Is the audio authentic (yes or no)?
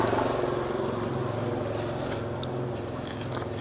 yes